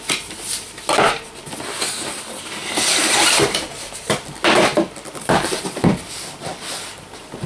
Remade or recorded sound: recorded